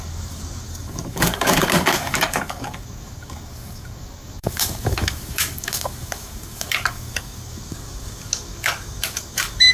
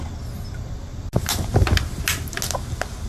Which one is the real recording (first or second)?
second